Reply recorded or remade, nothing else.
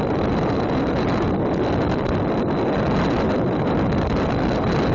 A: recorded